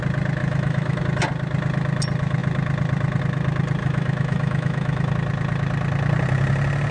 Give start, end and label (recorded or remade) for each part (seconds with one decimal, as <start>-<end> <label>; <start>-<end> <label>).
0.0-0.4 recorded; 0.4-1.0 remade; 1.0-3.8 recorded; 3.8-5.1 remade; 5.1-6.9 recorded